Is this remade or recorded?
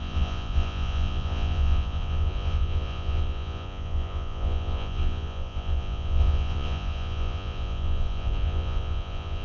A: remade